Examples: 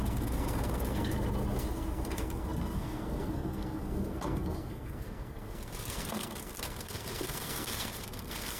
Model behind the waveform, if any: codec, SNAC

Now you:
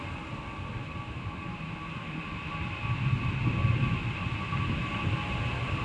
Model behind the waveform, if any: none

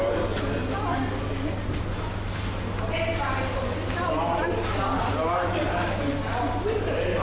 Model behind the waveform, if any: none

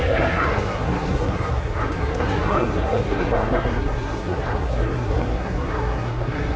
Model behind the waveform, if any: codec, SNAC